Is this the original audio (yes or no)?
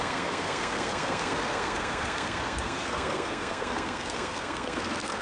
no